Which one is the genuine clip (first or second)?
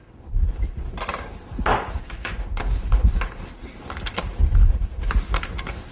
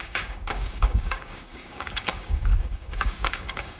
first